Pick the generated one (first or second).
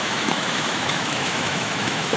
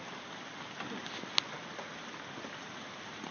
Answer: first